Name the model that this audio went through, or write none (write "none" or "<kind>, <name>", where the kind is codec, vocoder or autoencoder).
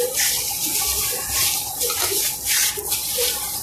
none